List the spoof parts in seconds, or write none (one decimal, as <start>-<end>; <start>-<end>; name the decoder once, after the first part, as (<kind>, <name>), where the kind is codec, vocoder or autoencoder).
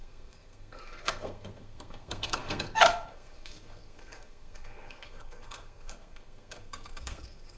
0.0-7.6 (codec, SNAC)